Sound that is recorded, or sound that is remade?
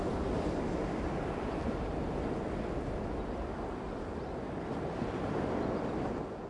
recorded